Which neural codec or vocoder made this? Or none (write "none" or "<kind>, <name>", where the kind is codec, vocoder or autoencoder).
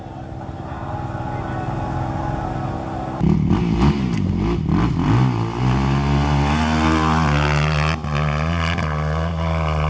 none